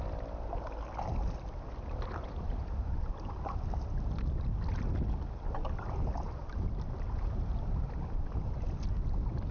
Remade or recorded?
recorded